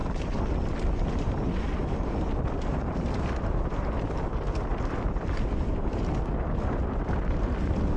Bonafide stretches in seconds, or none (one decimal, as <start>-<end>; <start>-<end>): 0.5-8.0